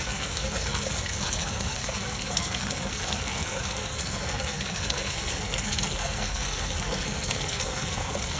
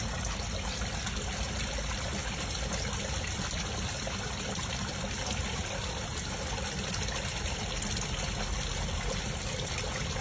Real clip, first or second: second